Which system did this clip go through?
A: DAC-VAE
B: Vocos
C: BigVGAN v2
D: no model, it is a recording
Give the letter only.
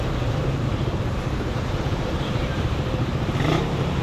C